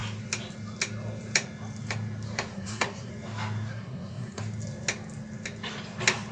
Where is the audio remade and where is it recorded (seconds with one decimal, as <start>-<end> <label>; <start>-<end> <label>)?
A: 0.0-2.5 recorded; 2.5-3.1 remade; 3.1-3.7 recorded; 3.7-4.4 remade; 4.4-6.3 recorded